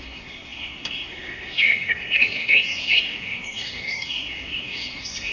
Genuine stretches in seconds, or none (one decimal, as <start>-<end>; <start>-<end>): none